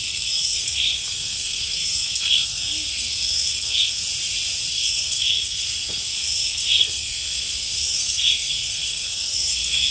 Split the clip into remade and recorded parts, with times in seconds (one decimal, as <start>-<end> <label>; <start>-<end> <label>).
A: 0.0-4.0 remade; 4.0-4.7 recorded; 4.7-9.9 remade